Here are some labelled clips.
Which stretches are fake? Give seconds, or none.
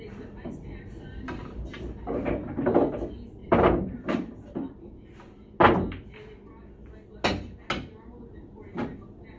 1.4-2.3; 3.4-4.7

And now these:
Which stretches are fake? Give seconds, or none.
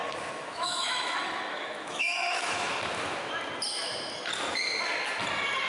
0.0-2.7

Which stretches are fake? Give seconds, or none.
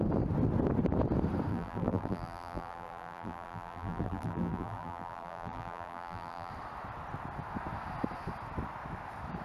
1.5-6.5